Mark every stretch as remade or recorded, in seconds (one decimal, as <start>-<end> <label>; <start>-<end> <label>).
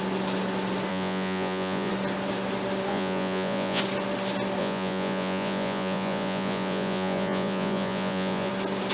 0.0-0.9 recorded; 0.9-1.9 remade; 1.9-2.9 recorded; 2.9-3.8 remade; 3.8-4.6 recorded; 4.6-8.5 remade; 8.5-8.9 recorded